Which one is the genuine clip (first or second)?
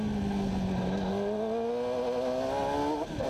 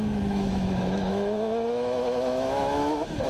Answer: first